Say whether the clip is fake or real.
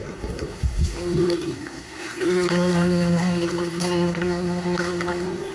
fake